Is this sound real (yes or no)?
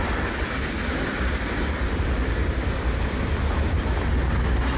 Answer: yes